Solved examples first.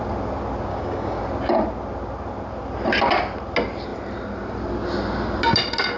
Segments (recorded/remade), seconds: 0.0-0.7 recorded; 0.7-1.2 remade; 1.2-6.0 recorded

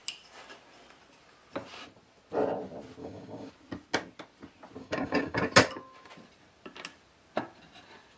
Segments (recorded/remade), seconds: 0.0-3.0 recorded; 3.0-3.5 remade; 3.5-4.8 recorded; 4.8-5.4 remade; 5.4-8.2 recorded

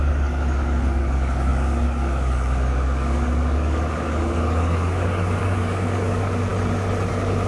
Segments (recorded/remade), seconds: 0.0-6.5 remade; 6.5-7.1 recorded; 7.1-7.5 remade

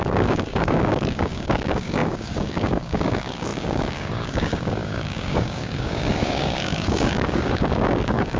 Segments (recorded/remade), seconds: 0.0-8.4 remade